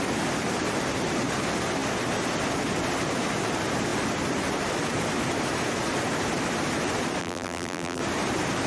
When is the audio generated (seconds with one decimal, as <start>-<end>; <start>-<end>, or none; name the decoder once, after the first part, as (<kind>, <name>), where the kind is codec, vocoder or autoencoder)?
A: 7.2-8.0 (vocoder, BigVGAN v2)